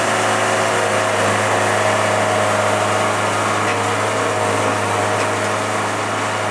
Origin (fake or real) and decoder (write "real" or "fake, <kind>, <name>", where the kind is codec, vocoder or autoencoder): real